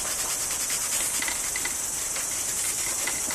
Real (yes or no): yes